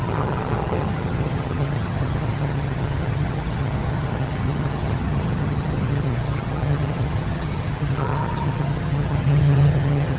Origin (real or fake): fake